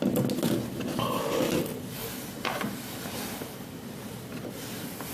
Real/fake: real